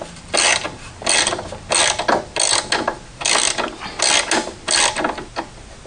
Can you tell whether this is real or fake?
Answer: real